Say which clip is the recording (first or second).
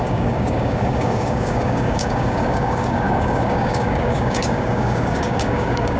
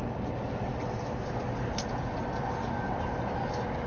second